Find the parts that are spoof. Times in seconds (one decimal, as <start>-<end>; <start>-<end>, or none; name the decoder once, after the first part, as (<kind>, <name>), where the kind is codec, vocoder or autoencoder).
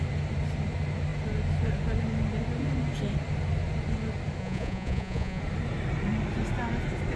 4.4-5.4 (vocoder, Vocos)